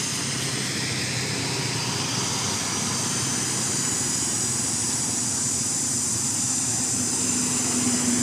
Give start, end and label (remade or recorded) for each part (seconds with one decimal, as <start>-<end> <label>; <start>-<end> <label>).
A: 0.0-4.8 recorded; 4.8-7.2 remade; 7.2-8.2 recorded